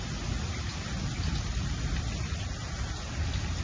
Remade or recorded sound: recorded